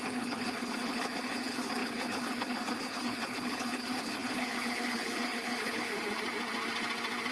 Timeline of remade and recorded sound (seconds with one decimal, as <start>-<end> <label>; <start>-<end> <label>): 0.0-5.9 remade; 5.9-7.3 recorded